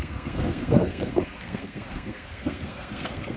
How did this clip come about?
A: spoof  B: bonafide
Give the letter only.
A